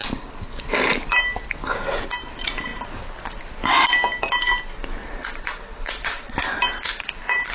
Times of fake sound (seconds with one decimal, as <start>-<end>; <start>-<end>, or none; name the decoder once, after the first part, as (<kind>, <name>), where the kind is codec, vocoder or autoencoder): 5.0-6.4 (vocoder, Vocos)